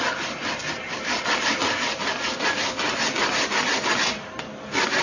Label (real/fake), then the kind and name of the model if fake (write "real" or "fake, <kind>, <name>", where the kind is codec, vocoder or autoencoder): real